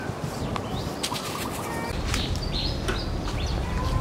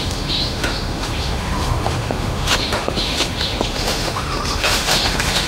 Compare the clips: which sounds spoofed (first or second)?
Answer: second